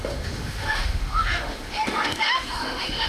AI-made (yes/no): yes